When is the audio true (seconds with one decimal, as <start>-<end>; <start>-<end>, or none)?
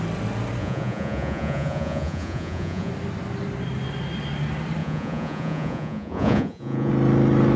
0.0-0.6; 2.9-4.8; 6.9-7.6